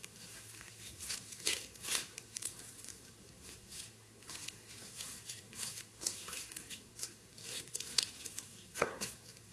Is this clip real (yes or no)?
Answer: no